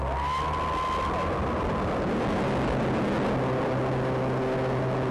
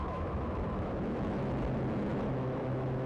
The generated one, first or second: second